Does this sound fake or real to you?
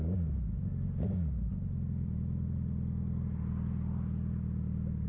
real